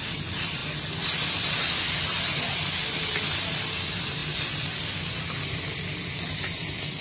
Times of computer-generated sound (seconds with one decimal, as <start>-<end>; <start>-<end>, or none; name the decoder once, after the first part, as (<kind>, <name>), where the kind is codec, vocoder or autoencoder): none